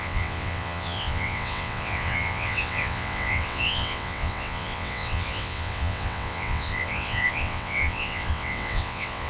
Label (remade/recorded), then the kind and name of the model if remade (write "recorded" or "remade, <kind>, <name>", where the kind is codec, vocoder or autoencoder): remade, vocoder, WaveNeXt